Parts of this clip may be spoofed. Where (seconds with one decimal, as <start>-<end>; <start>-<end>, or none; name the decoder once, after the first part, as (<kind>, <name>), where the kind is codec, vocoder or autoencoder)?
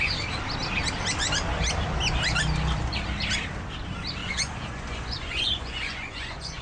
4.2-6.6 (vocoder, Vocos)